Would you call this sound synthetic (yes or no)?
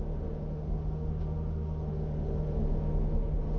yes